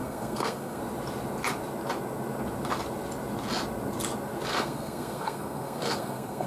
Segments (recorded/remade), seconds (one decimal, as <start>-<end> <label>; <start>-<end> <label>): 0.0-0.8 remade; 0.8-4.5 recorded; 4.5-6.5 remade